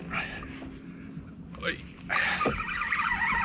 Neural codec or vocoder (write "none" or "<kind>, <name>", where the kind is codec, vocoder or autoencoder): none